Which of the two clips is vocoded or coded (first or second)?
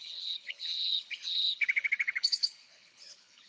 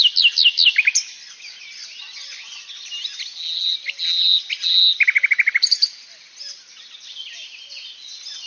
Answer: first